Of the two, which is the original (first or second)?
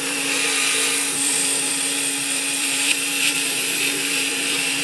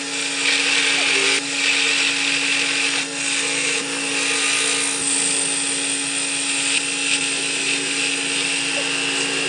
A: second